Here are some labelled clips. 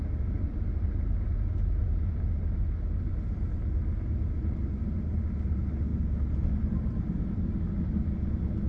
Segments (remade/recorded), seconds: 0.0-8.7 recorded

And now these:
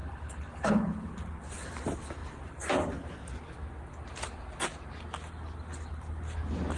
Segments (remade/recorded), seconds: 0.0-1.1 remade; 1.1-6.8 recorded

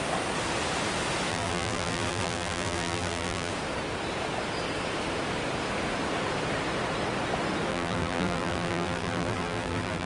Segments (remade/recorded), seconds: 0.0-1.3 recorded; 1.3-3.5 remade; 3.5-7.7 recorded; 7.7-10.1 remade

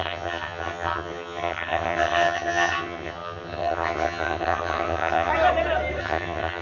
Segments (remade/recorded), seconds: 0.0-5.3 remade; 5.3-6.0 recorded; 6.0-6.6 remade

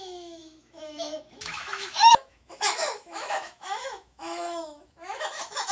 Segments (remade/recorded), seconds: 0.0-5.7 remade

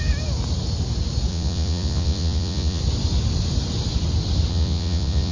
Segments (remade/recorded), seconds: 0.0-1.3 recorded; 1.3-2.8 remade; 2.8-4.5 recorded; 4.5-5.3 remade

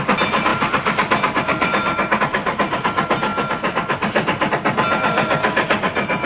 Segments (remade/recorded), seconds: 0.0-6.3 recorded